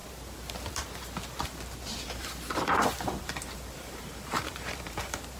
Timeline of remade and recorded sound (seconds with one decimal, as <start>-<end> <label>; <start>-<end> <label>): 0.0-3.2 recorded; 3.2-5.4 remade